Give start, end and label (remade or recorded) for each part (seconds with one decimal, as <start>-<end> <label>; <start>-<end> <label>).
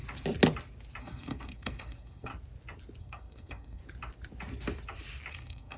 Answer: 0.0-1.0 recorded; 1.0-2.3 remade; 2.3-3.0 recorded; 3.0-3.8 remade; 3.8-5.3 recorded; 5.3-5.8 remade